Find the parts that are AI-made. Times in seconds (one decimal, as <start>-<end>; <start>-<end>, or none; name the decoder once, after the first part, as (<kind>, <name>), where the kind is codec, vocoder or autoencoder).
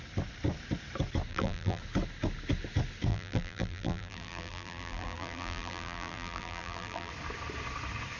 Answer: 1.3-1.8 (vocoder, BigVGAN v2); 3.1-7.1